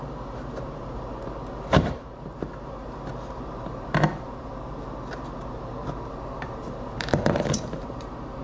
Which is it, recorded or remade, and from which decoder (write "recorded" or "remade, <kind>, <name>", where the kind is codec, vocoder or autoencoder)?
remade, vocoder, BigVGAN v2